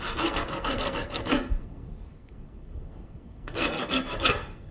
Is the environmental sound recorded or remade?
remade